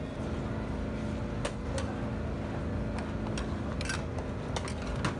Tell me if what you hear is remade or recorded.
recorded